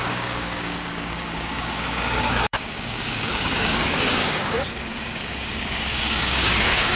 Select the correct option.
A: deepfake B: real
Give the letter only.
A